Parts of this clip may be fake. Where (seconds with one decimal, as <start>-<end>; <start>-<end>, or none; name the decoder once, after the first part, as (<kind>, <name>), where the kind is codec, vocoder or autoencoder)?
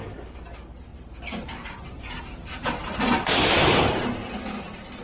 0.9-3.9 (vocoder, BigVGAN v2)